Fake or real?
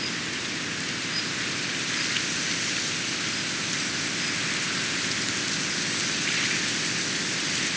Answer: real